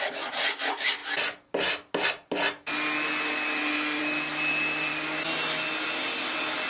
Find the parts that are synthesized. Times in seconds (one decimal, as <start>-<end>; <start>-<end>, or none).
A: none